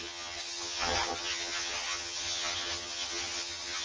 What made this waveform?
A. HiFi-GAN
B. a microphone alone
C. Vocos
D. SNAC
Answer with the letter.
A